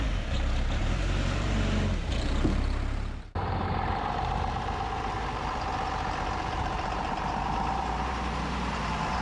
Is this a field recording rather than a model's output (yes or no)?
no